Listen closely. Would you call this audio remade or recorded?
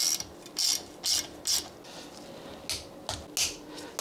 recorded